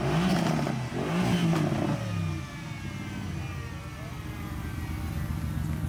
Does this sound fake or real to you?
real